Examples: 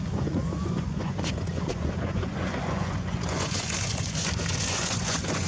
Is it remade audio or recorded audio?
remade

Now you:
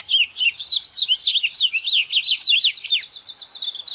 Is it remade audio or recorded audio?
recorded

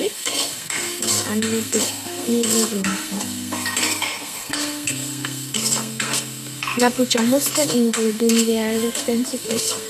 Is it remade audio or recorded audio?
remade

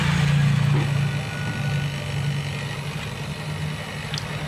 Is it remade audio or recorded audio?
recorded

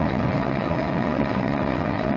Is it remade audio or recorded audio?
remade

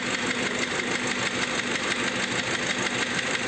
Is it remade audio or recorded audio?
recorded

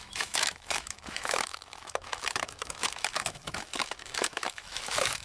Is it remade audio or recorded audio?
remade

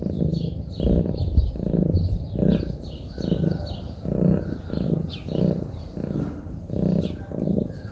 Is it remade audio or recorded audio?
recorded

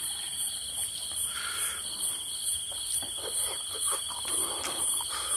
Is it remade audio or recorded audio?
recorded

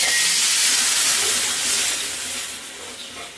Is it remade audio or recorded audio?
recorded